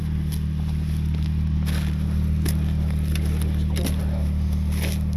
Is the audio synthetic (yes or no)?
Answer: no